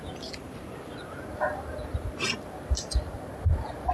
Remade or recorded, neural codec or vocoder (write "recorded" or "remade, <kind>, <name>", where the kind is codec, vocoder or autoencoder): recorded